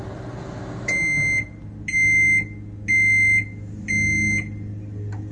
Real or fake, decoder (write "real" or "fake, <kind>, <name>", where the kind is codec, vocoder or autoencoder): real